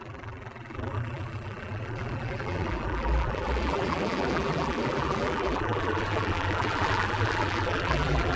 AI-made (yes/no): yes